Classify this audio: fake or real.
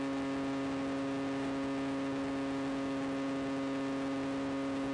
real